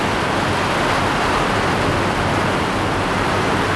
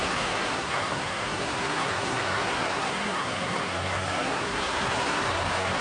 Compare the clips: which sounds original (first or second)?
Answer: first